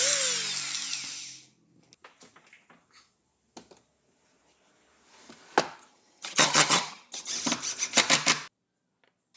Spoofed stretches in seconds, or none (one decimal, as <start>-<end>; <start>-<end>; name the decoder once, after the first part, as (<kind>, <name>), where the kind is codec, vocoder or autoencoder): 5.9-7.3 (vocoder, HiFi-GAN)